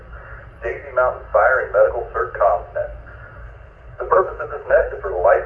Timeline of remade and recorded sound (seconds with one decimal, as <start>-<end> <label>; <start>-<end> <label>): 0.0-3.4 recorded; 3.4-5.0 remade; 5.0-5.5 recorded